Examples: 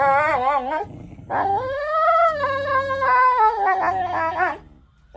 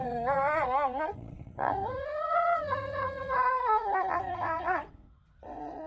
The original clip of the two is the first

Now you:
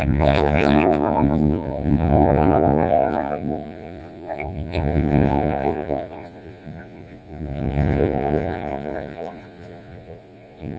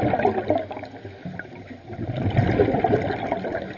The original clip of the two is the second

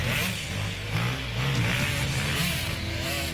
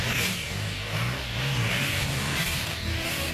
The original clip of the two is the first